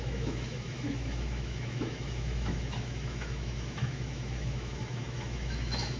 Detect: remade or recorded remade